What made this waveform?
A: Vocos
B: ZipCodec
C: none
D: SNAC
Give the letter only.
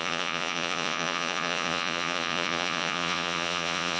A